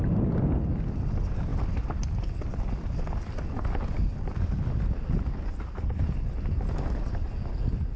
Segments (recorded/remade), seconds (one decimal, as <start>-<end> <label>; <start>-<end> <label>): 0.0-8.0 recorded